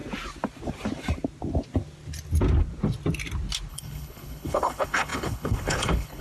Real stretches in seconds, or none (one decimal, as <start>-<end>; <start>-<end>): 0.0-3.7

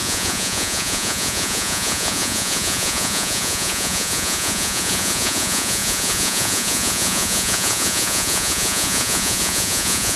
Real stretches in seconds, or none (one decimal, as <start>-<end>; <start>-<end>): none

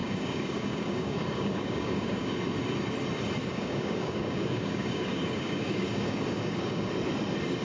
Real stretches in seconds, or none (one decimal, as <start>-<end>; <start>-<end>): 2.3-3.4; 6.9-7.6

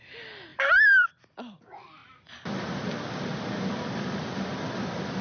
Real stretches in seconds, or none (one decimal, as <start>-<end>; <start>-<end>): none